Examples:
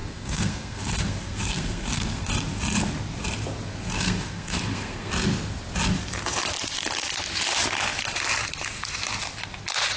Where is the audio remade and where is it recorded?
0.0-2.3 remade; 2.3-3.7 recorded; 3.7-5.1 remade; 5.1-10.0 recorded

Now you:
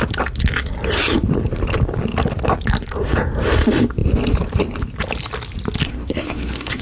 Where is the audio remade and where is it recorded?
0.0-5.8 recorded; 5.8-6.8 remade

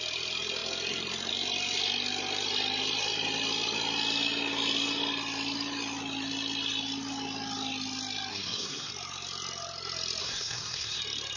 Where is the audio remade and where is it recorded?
0.0-8.3 recorded; 8.3-8.9 remade; 8.9-10.2 recorded; 10.2-11.0 remade; 11.0-11.4 recorded

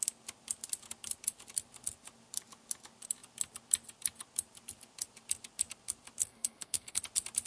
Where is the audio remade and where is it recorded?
0.0-6.2 recorded; 6.2-7.0 remade; 7.0-7.5 recorded

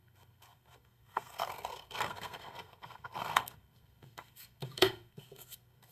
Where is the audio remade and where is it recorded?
0.0-5.9 remade

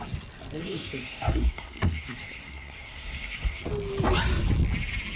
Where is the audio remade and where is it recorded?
0.0-0.6 recorded; 0.6-3.7 remade; 3.7-5.2 recorded